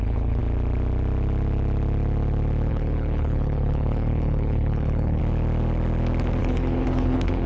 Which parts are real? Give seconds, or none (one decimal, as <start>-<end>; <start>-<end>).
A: 0.4-2.7; 5.2-6.4